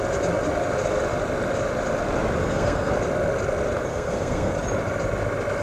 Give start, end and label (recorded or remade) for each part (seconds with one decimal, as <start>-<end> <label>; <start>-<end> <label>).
0.0-2.4 recorded; 2.4-2.9 remade; 2.9-3.9 recorded; 3.9-4.5 remade; 4.5-5.6 recorded